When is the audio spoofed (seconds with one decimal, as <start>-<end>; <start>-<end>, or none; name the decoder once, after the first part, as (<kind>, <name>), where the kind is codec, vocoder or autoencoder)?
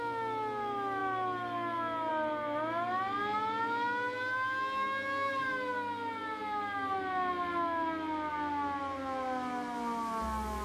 none